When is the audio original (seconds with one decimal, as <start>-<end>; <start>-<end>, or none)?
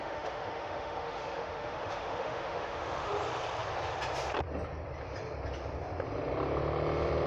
3.1-7.3